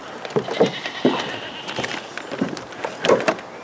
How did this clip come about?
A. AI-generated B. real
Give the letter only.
B